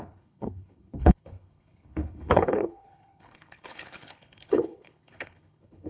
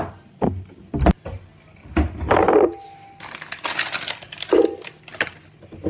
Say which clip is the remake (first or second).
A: first